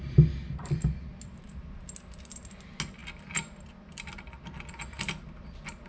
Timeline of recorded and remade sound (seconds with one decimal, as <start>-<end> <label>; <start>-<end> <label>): 0.0-5.9 recorded